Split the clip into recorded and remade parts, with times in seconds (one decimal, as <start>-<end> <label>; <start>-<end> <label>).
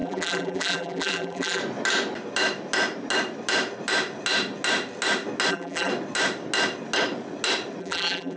0.0-1.6 remade; 1.6-5.5 recorded; 5.5-5.9 remade; 5.9-7.8 recorded; 7.8-8.4 remade